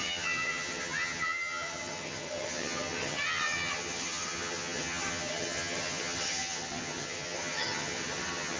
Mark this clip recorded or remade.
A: remade